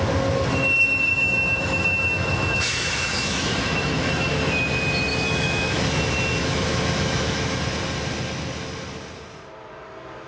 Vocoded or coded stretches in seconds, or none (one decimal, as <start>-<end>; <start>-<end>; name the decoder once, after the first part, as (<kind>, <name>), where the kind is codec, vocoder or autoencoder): 1.1-4.4 (autoencoder, DAC-VAE); 5.1-6.0; 6.4-7.6

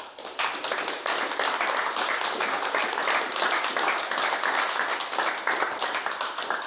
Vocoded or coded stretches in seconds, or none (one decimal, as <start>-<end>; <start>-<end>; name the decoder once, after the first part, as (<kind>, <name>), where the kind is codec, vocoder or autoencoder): 2.4-3.0 (vocoder, BigVGAN v2)

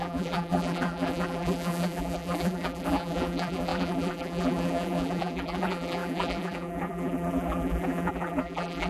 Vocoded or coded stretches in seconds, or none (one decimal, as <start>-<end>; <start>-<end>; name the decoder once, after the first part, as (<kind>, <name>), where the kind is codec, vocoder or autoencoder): 0.0-8.9 (vocoder, BigVGAN v2)